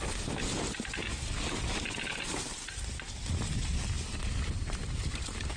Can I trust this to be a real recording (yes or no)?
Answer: yes